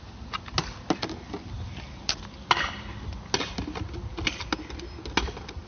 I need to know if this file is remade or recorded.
recorded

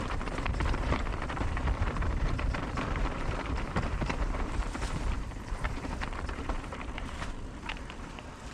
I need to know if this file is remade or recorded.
remade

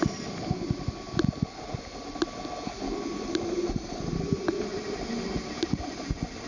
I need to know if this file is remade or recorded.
recorded